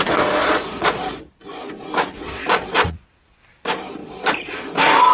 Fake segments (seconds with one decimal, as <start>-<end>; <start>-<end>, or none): 0.4-1.3; 2.2-3.4; 4.0-4.6